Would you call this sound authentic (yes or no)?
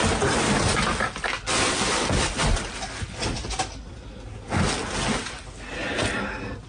yes